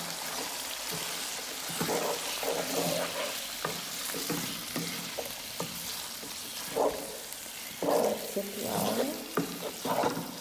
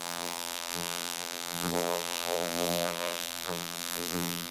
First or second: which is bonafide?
first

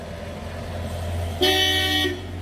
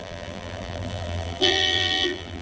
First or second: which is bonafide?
first